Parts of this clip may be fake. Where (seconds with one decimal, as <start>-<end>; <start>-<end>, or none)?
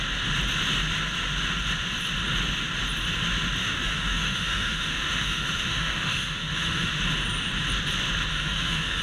3.6-6.9; 8.3-9.0